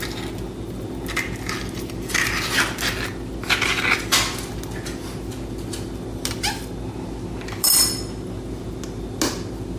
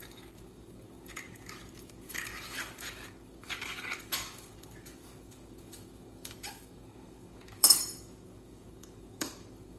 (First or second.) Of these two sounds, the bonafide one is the first